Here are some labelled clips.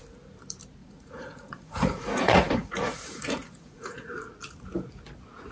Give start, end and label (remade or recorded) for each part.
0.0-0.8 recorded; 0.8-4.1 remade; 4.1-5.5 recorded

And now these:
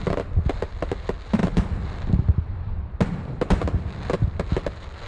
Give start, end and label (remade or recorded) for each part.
0.0-5.1 recorded

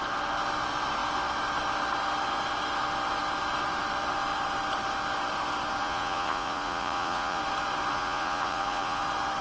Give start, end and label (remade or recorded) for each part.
0.0-5.8 recorded; 5.8-7.4 remade; 7.4-7.9 recorded; 7.9-9.0 remade; 9.0-9.4 recorded

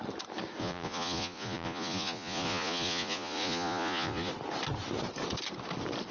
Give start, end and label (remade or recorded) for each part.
0.0-0.6 recorded; 0.6-4.3 remade; 4.3-6.1 recorded

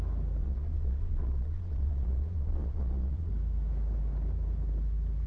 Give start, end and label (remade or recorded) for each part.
0.0-0.4 recorded; 0.4-3.3 remade; 3.3-5.3 recorded

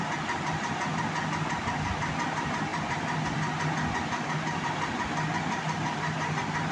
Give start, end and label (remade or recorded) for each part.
0.0-6.7 recorded

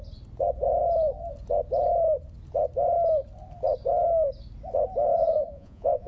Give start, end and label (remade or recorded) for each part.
0.0-5.1 recorded; 5.1-6.1 remade